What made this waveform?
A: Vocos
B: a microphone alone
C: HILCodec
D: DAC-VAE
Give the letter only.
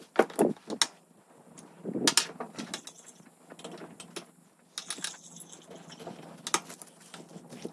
B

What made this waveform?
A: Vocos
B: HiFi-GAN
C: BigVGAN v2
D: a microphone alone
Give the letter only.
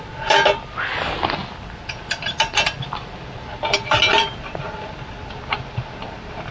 D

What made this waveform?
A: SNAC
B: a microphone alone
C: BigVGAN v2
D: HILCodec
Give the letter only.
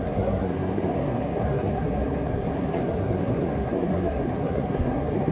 A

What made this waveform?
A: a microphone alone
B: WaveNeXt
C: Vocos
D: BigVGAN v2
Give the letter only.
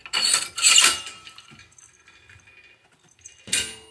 A